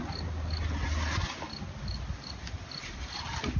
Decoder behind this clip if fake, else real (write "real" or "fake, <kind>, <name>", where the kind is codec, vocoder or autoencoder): real